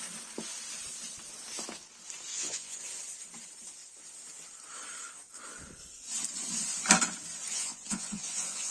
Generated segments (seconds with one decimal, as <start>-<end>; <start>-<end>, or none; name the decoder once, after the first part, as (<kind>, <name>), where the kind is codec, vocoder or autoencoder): 2.3-2.8 (vocoder, Vocos); 7.5-8.7